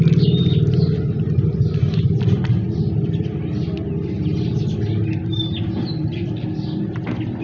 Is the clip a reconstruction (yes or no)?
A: no